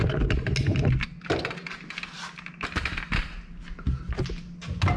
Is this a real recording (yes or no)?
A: yes